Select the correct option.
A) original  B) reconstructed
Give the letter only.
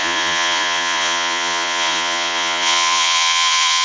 B